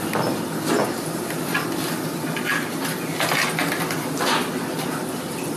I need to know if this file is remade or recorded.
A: recorded